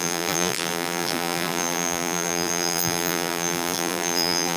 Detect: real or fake fake